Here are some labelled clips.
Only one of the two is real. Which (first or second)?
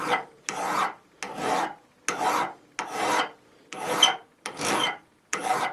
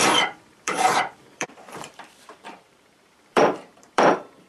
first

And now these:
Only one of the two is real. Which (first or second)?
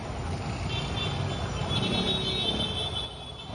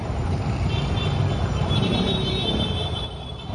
first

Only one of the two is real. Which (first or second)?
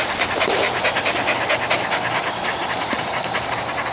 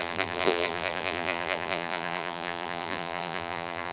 first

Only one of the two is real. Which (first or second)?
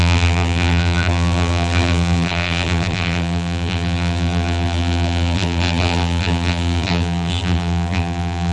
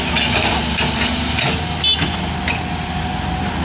second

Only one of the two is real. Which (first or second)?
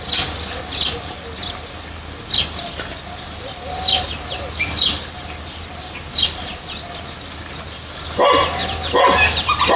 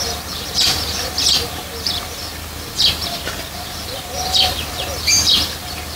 first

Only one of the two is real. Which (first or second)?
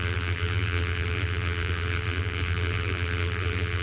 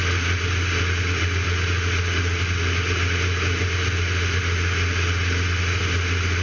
second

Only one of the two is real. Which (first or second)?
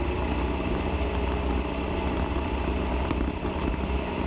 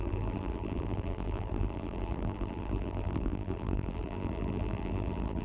first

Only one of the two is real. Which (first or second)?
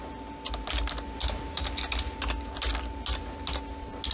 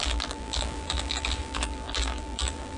first